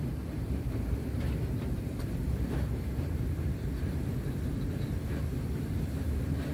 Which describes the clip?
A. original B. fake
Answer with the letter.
B